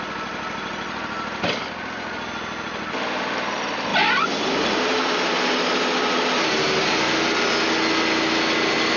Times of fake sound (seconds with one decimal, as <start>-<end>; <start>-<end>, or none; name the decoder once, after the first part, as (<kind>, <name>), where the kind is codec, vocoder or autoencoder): none